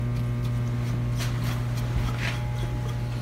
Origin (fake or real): real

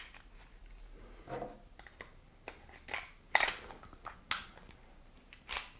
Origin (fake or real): real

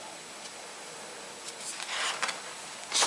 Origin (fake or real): real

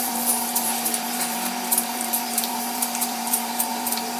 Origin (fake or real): fake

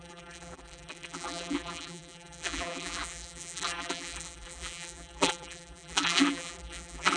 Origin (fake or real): fake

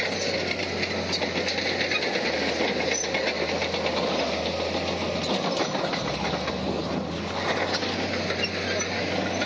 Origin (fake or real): real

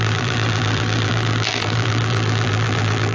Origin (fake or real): fake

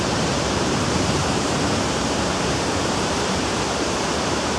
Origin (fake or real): fake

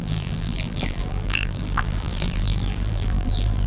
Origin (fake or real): fake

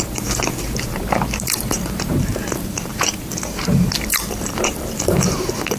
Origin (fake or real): fake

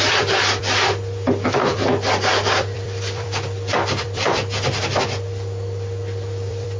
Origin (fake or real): fake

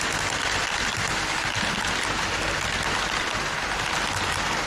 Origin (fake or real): real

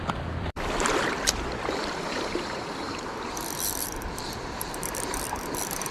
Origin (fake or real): fake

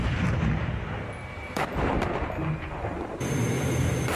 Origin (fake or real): fake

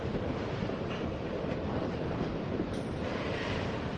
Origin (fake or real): fake